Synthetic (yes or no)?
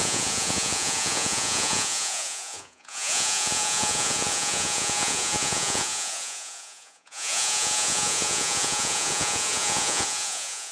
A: yes